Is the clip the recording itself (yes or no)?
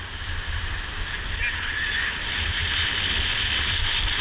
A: yes